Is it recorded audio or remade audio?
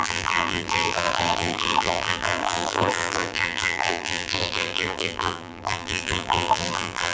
remade